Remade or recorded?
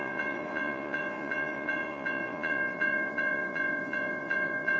remade